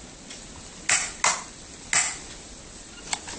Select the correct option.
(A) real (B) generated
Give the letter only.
A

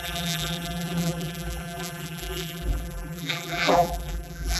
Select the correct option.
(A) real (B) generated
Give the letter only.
B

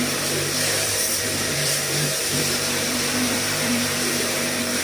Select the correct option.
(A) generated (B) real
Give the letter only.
A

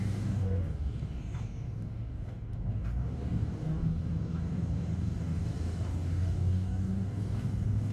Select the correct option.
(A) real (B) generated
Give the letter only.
B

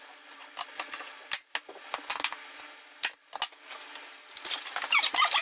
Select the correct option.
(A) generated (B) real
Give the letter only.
B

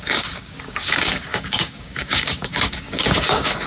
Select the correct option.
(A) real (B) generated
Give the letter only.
B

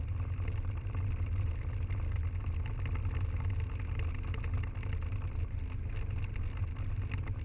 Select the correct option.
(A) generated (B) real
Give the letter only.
B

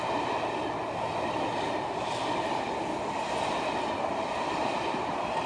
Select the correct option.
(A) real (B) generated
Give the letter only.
A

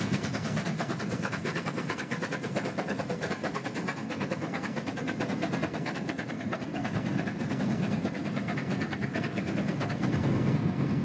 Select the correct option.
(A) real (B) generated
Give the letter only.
B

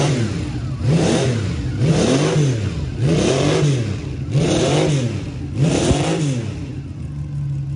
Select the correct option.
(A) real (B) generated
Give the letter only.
A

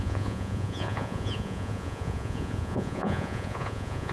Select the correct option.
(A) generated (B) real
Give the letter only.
A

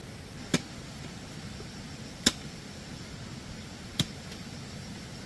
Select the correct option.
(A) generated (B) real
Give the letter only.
B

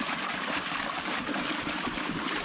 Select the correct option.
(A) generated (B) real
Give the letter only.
A